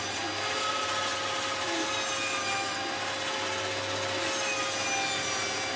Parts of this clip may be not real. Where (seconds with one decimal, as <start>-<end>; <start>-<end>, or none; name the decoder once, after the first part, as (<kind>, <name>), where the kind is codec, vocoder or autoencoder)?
none